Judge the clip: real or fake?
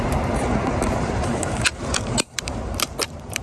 fake